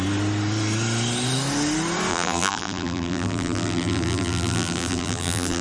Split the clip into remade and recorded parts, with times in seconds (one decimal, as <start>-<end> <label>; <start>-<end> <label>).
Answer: 0.0-2.1 recorded; 2.1-5.6 remade